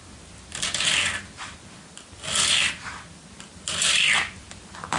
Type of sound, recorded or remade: recorded